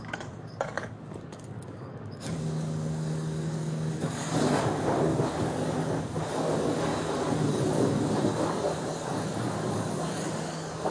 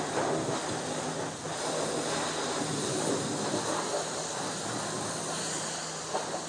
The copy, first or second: first